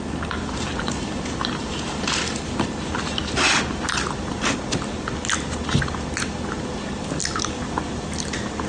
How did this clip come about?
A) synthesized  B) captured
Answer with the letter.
B